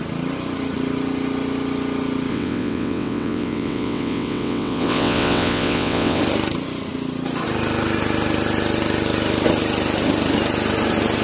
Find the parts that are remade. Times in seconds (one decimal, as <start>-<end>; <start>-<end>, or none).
2.3-6.2